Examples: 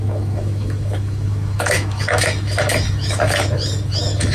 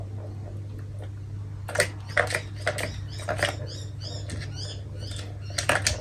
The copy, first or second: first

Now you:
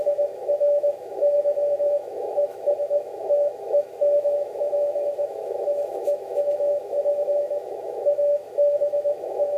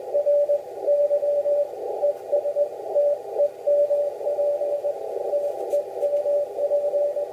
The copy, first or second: first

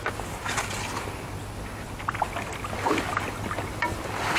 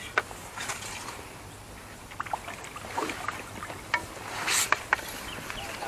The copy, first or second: second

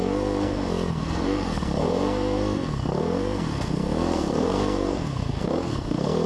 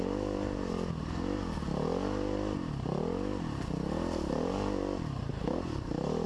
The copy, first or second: first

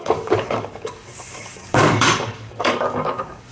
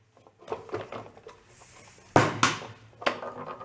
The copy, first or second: first